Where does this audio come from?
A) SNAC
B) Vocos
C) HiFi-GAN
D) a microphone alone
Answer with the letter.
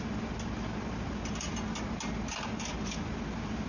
D